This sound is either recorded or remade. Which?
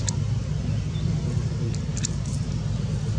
recorded